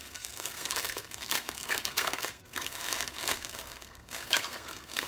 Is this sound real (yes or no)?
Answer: no